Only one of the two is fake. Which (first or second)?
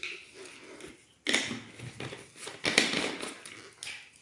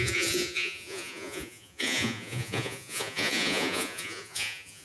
second